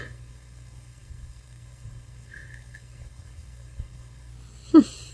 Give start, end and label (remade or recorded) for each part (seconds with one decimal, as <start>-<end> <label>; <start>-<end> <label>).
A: 0.0-4.3 remade; 4.3-5.1 recorded